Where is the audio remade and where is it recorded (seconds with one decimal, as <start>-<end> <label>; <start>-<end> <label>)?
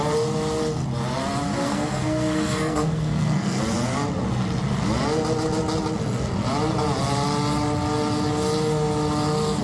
0.0-1.6 recorded; 1.6-3.6 remade; 3.6-9.6 recorded